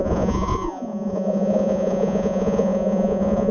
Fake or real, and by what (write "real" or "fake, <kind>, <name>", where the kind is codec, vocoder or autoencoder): fake, vocoder, Vocos